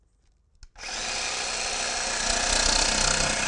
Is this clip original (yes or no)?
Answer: yes